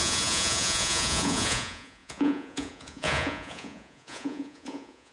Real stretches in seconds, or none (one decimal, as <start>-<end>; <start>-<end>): none